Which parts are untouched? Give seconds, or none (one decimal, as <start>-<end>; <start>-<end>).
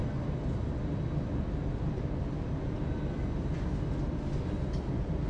0.0-5.3